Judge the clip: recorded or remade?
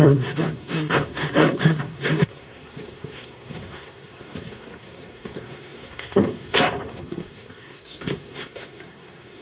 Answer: remade